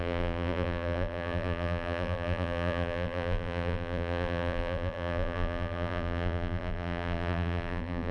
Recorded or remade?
remade